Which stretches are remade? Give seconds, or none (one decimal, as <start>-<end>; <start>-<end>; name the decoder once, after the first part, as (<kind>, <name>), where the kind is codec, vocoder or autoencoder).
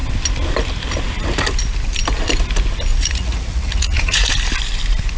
2.9-4.3 (vocoder, Vocos)